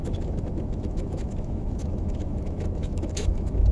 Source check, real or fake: fake